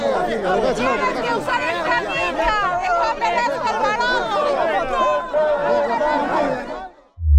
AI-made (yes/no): no